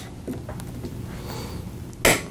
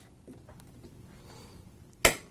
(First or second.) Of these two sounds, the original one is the first